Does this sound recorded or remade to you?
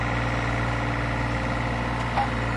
recorded